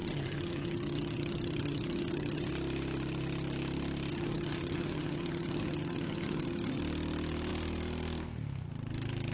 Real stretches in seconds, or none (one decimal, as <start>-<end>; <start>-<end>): 2.5-4.1; 6.8-9.3